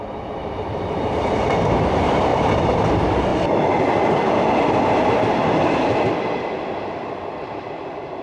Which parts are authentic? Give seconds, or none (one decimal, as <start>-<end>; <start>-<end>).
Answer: 2.3-2.9; 3.3-4.7; 5.4-7.4